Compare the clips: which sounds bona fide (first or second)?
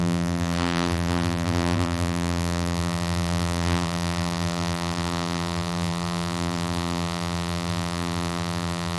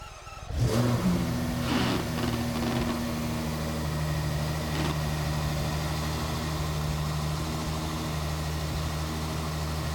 second